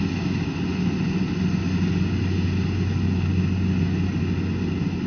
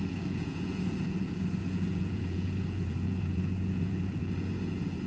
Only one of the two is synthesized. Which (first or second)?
second